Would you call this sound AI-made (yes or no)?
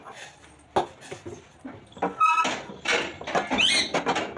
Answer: no